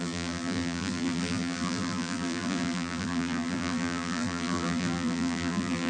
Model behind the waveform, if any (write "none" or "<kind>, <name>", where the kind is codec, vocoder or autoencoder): vocoder, BigVGAN v2